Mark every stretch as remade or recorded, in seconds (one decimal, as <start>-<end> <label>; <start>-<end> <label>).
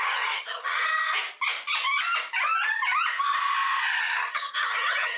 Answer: 0.0-0.9 remade; 0.9-4.0 recorded; 4.0-5.2 remade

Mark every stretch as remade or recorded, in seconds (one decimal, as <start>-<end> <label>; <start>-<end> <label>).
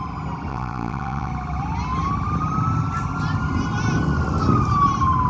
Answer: 0.0-0.5 recorded; 0.5-1.3 remade; 1.3-5.3 recorded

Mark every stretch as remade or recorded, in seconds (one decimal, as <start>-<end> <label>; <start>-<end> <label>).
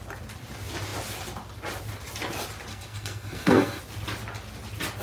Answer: 0.0-2.7 recorded; 2.7-3.8 remade; 3.8-5.0 recorded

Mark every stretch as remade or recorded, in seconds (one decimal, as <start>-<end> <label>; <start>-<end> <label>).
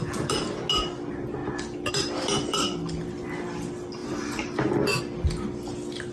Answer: 0.0-6.1 recorded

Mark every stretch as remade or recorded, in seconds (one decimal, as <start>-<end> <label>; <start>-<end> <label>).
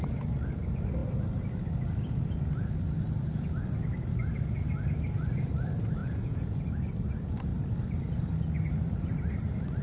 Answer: 0.0-6.0 recorded; 6.0-6.6 remade; 6.6-9.8 recorded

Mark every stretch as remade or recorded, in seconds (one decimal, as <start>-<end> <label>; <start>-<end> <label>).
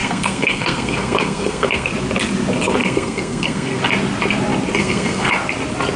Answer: 0.0-1.9 remade; 1.9-2.8 recorded; 2.8-3.8 remade; 3.8-4.8 recorded; 4.8-5.3 remade; 5.3-6.0 recorded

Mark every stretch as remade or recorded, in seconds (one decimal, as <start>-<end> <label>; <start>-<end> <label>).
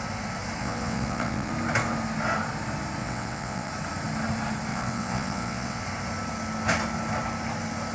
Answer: 0.0-0.6 recorded; 0.6-1.5 remade; 1.5-3.0 recorded; 3.0-3.7 remade; 3.7-4.7 recorded; 4.7-5.8 remade; 5.8-7.9 recorded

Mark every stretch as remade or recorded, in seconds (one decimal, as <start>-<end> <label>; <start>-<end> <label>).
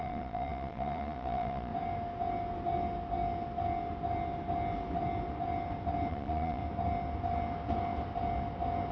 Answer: 0.0-1.7 remade; 1.7-6.1 recorded; 6.1-6.6 remade; 6.6-8.9 recorded